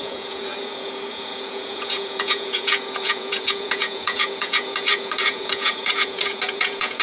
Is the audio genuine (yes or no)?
no